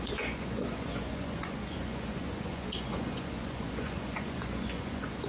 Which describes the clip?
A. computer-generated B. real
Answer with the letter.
A